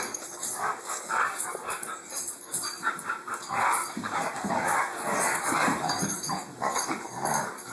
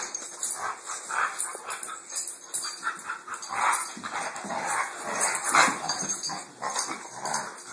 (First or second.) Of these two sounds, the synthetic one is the first